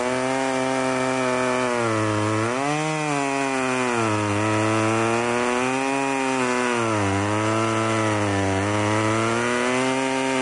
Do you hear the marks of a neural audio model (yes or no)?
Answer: no